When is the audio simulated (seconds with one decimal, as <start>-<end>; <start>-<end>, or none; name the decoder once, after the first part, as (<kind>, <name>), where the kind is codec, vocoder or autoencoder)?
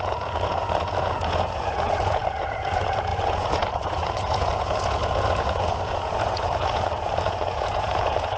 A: 0.0-8.4 (vocoder, Vocos)